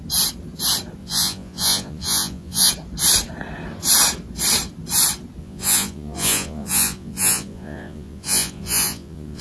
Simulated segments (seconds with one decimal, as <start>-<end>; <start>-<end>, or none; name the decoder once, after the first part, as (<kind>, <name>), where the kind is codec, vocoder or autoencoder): 1.0-2.7 (vocoder, Vocos); 5.4-9.4